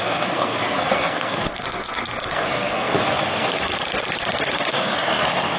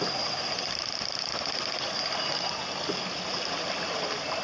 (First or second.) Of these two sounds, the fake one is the first